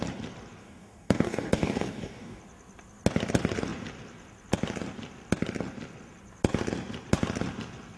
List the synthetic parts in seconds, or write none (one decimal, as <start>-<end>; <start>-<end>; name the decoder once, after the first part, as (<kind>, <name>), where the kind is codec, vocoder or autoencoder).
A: 0.6-2.4 (codec, DAC)